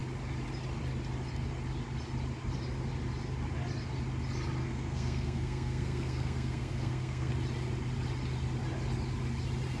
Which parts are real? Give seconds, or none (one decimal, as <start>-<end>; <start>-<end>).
0.0-4.6; 7.3-9.8